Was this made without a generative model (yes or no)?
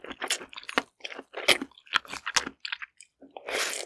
yes